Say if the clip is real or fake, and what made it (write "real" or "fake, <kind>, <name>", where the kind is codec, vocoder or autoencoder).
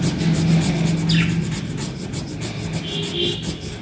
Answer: real